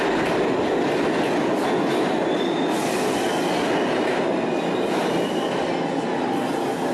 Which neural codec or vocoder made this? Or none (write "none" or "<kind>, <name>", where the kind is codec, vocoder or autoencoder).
none